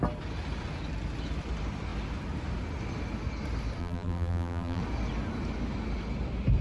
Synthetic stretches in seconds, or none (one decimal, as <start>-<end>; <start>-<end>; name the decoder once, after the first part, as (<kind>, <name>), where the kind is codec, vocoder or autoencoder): 3.8-4.8 (vocoder, BigVGAN v2)